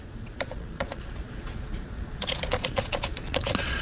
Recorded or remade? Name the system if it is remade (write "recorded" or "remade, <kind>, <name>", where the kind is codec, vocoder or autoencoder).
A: remade, vocoder, Vocos